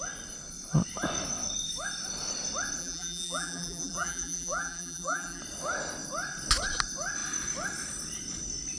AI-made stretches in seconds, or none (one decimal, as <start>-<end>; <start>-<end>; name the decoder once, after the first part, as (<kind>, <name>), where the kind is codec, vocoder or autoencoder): 2.8-5.4 (vocoder, BigVGAN v2)